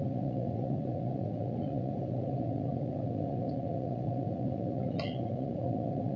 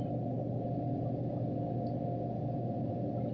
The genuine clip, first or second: second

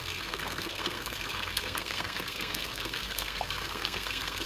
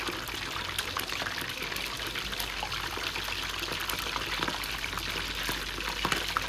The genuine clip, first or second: second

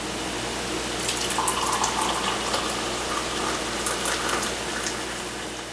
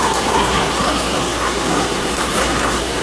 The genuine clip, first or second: first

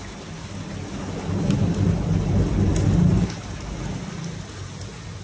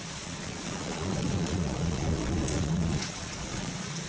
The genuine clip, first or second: first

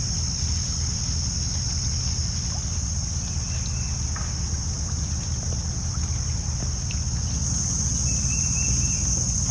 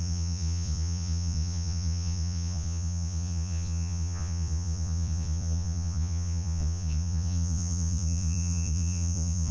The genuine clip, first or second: first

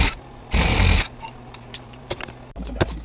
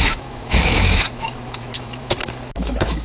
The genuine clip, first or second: first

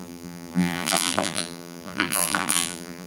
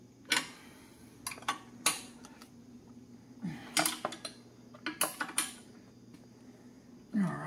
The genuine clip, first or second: second